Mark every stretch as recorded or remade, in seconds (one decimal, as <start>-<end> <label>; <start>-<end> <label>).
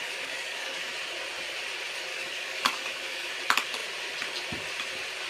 0.0-0.9 remade; 0.9-2.1 recorded; 2.1-3.3 remade; 3.3-5.3 recorded